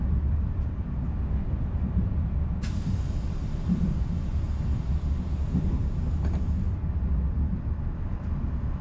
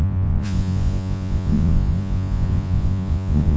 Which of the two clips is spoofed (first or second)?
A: second